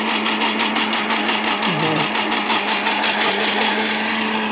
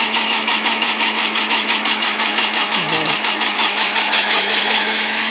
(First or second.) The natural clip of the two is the first